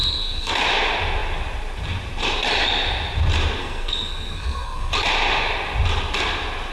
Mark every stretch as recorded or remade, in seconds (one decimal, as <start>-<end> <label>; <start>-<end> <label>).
0.0-0.5 remade; 0.5-3.6 recorded; 3.6-4.9 remade; 4.9-6.7 recorded